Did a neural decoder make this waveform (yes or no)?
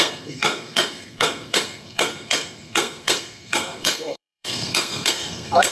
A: yes